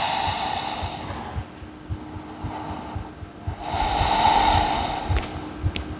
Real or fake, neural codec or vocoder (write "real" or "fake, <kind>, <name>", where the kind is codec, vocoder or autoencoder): real